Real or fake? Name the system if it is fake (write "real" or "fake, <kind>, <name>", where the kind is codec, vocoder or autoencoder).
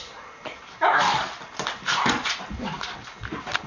real